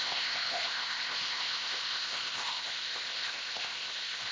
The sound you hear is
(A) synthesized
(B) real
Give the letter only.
A